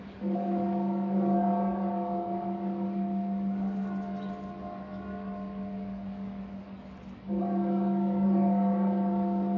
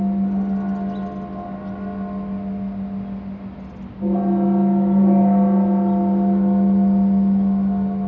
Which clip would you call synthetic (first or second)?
first